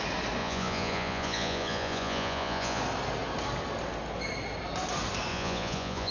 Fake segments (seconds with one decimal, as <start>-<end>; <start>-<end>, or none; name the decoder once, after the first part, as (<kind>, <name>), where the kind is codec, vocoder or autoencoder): 0.4-2.8 (vocoder, Vocos); 5.3-6.1